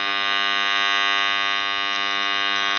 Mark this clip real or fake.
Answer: real